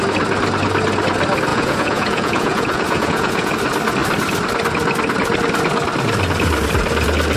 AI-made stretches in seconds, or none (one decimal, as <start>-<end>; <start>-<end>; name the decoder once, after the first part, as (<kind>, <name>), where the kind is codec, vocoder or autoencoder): 1.5-3.5 (vocoder, Vocos)